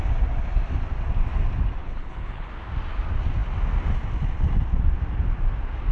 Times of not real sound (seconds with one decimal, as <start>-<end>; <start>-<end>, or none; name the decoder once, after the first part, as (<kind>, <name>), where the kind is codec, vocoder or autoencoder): 1.8-2.5 (codec, HILCodec)